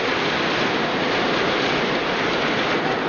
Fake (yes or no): no